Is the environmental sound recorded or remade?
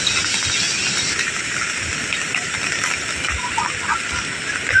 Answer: recorded